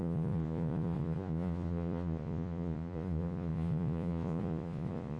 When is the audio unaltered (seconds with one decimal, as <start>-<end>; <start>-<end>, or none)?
none